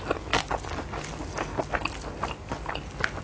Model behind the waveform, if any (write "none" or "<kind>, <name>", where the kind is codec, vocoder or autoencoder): none